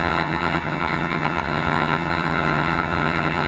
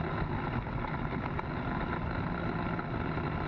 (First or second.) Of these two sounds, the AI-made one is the first